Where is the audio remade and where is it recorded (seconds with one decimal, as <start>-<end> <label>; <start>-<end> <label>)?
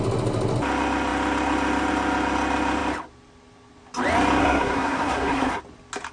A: 0.0-4.4 recorded; 4.4-5.6 remade; 5.6-6.1 recorded